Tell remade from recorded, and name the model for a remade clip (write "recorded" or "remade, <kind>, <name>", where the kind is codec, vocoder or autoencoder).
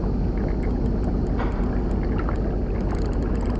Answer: recorded